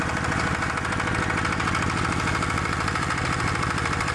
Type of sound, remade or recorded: recorded